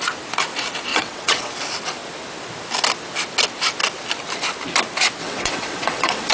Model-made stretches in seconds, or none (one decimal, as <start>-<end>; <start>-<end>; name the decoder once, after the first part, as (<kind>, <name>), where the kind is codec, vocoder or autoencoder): 0.9-1.5 (vocoder, WaveNeXt); 5.2-6.3